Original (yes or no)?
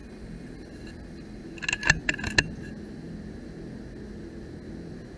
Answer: yes